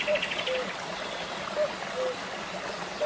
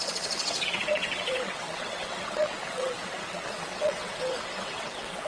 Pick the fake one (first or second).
second